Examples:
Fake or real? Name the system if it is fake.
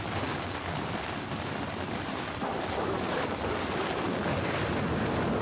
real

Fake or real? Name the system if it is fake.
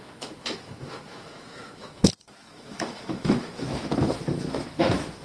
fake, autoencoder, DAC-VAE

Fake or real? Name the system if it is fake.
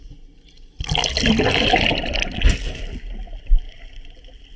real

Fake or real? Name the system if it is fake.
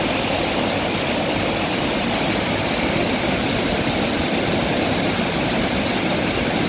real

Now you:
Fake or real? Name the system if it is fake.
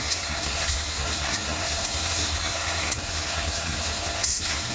fake, codec, SNAC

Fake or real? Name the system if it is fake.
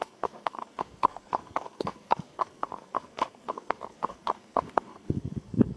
fake, codec, SNAC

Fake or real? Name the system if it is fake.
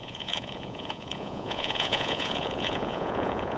fake, vocoder, Vocos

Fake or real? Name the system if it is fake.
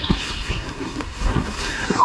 fake, codec, SNAC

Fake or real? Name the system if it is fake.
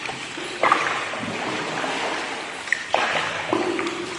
real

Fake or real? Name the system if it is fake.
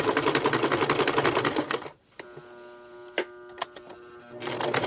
real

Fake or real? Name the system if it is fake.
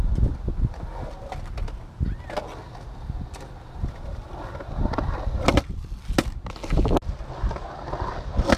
real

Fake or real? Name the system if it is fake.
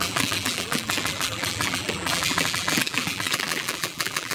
fake, vocoder, BigVGAN v2